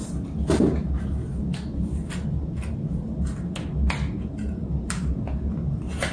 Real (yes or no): yes